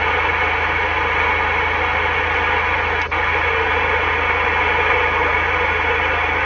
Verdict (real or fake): real